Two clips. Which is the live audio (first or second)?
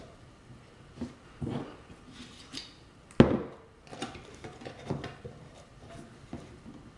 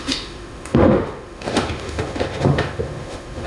first